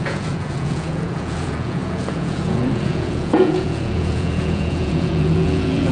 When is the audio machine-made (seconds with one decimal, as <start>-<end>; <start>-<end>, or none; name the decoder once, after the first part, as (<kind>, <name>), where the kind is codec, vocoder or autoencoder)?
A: 0.0-5.9 (vocoder, Vocos)